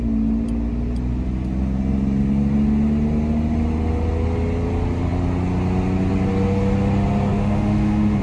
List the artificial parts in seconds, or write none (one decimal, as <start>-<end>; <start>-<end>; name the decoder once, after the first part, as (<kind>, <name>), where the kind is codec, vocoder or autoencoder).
7.3-8.2 (autoencoder, DAC-VAE)